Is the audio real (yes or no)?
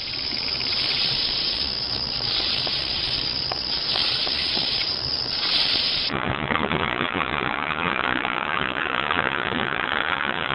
no